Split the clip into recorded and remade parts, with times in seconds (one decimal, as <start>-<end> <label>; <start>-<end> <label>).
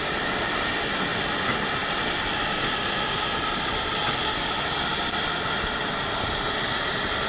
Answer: 0.0-7.3 recorded